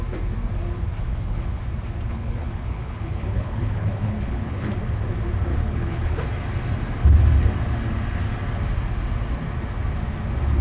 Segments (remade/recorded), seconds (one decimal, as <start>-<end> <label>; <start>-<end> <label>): 0.0-1.1 recorded; 1.1-1.6 remade; 1.6-2.1 recorded; 2.1-4.7 remade; 4.7-5.5 recorded; 5.5-6.2 remade; 6.2-10.6 recorded